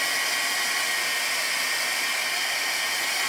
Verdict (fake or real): fake